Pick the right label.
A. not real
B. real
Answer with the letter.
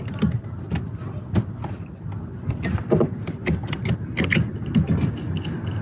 B